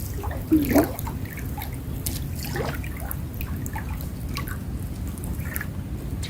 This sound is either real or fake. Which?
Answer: real